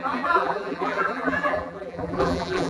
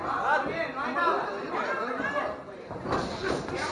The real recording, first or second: second